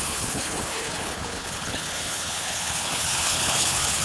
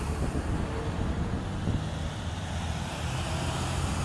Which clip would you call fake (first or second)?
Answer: first